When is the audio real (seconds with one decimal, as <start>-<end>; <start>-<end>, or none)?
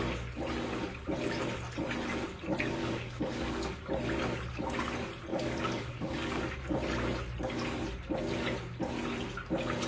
0.0-2.8; 3.8-5.3; 6.4-9.9